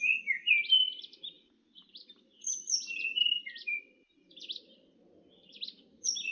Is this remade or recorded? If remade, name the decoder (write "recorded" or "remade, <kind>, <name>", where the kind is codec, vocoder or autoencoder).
recorded